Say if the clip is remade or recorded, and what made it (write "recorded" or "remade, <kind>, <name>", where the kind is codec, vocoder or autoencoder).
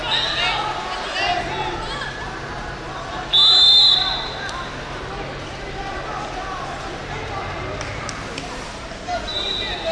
recorded